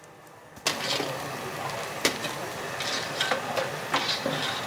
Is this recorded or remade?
remade